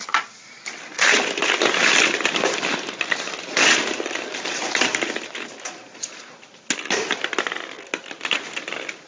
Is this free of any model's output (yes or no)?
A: yes